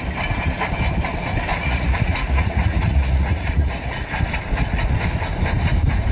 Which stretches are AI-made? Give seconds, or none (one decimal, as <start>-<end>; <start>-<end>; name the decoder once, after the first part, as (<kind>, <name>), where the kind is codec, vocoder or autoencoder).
1.5-4.0 (vocoder, Vocos)